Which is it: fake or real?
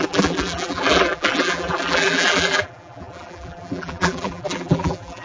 fake